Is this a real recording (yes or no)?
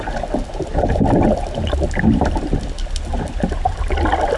yes